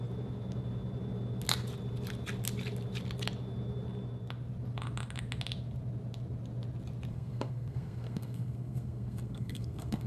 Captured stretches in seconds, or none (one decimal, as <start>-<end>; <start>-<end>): 0.0-7.1